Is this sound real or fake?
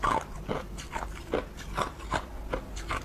real